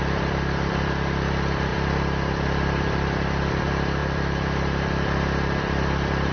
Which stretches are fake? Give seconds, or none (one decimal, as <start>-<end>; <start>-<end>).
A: 0.0-6.3